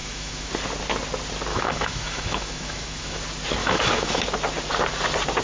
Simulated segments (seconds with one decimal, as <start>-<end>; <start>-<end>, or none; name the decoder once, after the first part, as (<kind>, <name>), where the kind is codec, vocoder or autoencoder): 0.0-0.5 (autoencoder, DAC-VAE); 1.5-3.2; 3.6-4.2